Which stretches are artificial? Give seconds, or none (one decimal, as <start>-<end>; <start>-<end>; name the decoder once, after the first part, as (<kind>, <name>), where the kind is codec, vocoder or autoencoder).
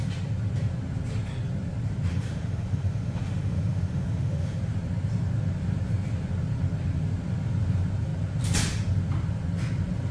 2.1-4.6 (autoencoder, DAC-VAE)